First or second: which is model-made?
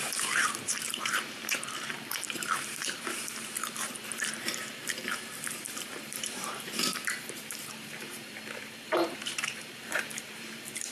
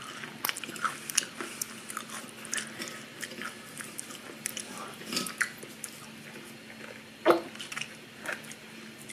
first